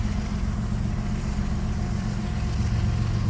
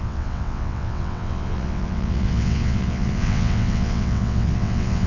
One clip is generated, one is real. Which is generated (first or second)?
second